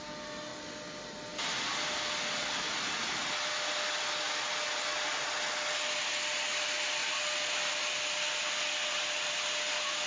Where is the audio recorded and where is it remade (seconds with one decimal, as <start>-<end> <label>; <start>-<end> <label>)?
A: 0.0-10.1 recorded